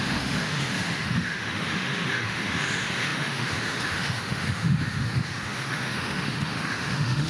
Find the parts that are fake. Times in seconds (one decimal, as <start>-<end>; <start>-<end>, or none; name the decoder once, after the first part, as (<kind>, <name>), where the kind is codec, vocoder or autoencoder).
0.0-7.3 (autoencoder, DAC-VAE)